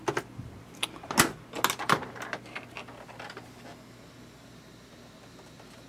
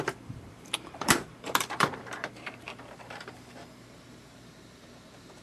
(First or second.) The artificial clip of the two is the second